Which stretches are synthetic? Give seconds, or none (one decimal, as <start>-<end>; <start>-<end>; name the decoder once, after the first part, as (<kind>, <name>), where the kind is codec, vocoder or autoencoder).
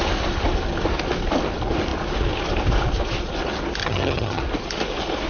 3.8-4.4 (vocoder, HiFi-GAN)